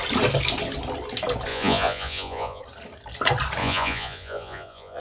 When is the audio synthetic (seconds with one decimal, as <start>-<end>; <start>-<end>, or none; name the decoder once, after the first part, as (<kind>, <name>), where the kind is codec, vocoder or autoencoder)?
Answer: 1.5-2.6 (vocoder, Vocos); 3.6-5.0